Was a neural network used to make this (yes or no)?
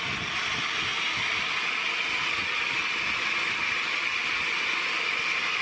no